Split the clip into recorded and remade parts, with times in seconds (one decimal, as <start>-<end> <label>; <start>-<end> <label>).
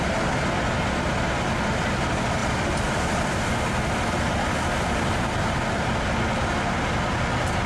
0.0-2.4 recorded; 2.4-3.2 remade; 3.2-7.7 recorded